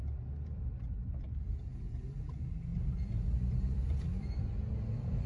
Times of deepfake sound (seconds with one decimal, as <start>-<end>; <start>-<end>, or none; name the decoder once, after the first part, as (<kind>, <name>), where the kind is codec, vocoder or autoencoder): 2.7-4.4 (vocoder, BigVGAN v2)